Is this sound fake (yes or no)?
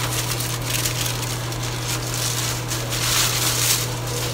no